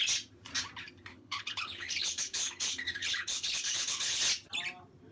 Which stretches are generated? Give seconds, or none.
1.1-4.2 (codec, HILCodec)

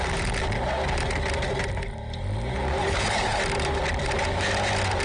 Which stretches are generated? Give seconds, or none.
2.8-3.4 (codec, HILCodec)

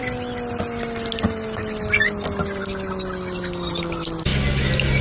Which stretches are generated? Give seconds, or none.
none

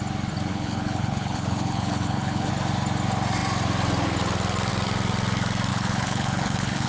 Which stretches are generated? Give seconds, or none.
0.5-2.5 (codec, HILCodec); 5.7-6.9

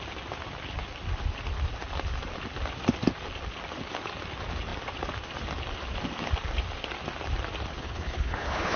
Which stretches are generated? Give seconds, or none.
7.7-8.8 (codec, HILCodec)

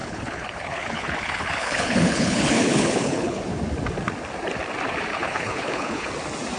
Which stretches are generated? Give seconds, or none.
0.0-3.4 (codec, HILCodec); 5.1-6.1

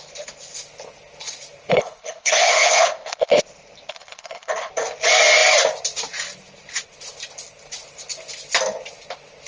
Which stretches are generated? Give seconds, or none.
1.7-3.4 (codec, HILCodec); 3.9-4.7

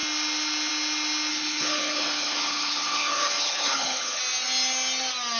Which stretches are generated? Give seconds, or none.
1.3-4.2 (codec, HILCodec)